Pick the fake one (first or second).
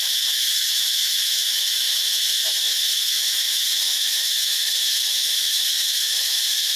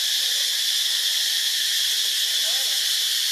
first